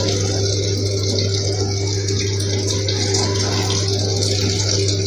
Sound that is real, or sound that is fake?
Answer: real